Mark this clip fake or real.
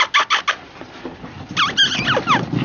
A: real